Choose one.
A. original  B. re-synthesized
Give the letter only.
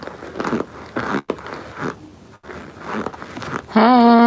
A